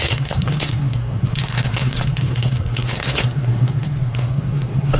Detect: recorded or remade remade